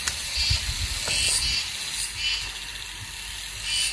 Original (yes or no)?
yes